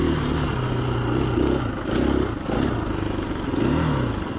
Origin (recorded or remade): recorded